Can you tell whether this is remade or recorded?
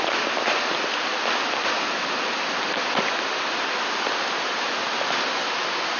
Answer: recorded